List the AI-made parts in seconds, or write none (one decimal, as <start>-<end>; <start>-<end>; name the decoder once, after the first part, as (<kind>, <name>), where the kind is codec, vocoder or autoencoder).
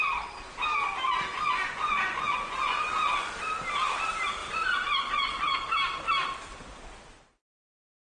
1.3-3.3 (vocoder, Vocos); 4.4-5.6